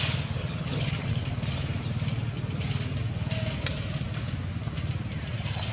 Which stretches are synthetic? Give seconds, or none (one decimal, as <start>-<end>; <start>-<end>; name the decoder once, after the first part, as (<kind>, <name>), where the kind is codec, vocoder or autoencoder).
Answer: 0.4-1.1 (vocoder, HiFi-GAN)